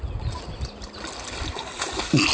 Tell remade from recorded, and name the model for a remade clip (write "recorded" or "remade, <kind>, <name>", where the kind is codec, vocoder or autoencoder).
recorded